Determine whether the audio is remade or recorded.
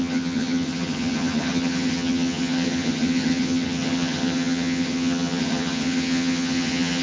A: remade